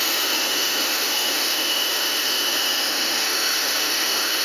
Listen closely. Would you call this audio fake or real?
fake